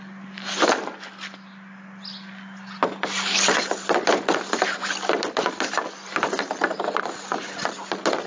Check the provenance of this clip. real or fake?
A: real